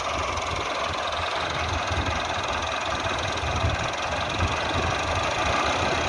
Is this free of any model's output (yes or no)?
yes